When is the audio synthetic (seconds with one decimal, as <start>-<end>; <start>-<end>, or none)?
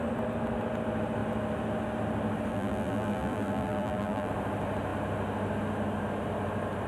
2.5-4.3